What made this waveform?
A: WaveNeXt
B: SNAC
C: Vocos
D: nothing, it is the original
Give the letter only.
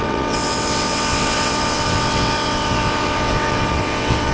A